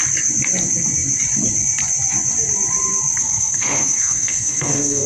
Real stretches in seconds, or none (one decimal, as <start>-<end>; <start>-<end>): 0.0-3.2